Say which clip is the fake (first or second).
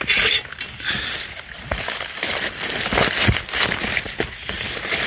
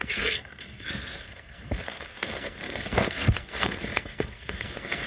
second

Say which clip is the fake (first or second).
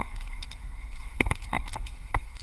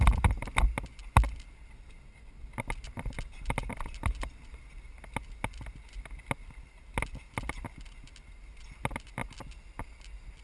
first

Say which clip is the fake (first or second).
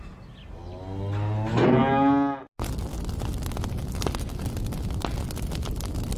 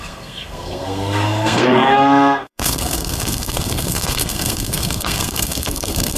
second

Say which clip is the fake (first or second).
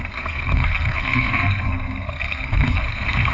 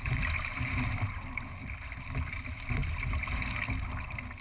first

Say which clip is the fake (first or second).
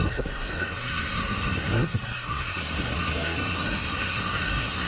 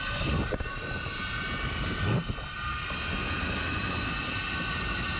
first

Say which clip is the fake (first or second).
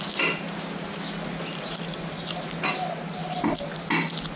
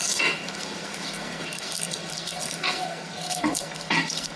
second